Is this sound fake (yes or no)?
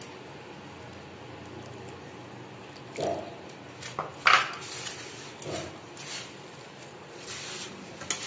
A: no